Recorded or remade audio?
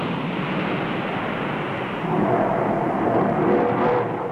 recorded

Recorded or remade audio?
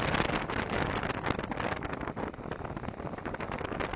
recorded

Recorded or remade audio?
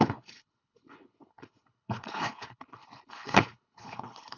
remade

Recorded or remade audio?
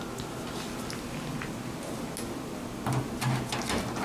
recorded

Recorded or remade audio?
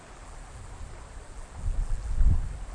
recorded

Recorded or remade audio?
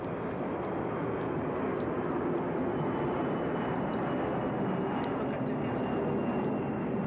recorded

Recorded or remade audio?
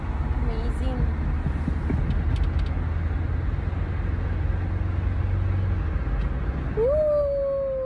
recorded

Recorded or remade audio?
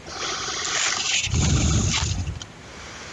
recorded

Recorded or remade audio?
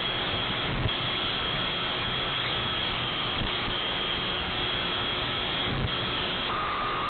remade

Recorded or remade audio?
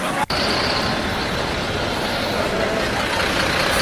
recorded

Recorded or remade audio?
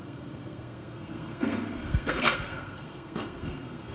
remade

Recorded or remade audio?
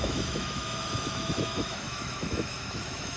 remade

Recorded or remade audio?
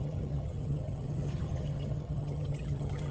remade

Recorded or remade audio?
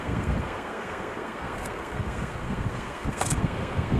remade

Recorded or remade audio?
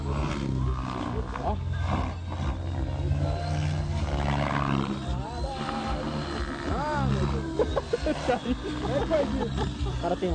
recorded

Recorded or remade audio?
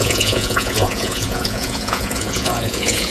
remade